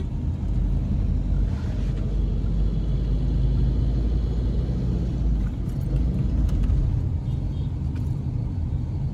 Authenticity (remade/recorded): recorded